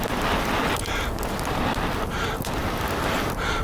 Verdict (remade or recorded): recorded